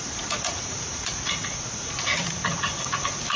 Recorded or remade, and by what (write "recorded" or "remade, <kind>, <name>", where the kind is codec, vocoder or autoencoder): remade, vocoder, Vocos